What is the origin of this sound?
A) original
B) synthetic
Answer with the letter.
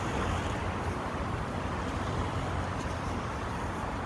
A